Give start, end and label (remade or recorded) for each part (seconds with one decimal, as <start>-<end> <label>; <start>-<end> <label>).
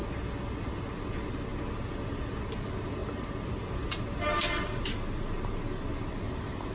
0.0-6.7 recorded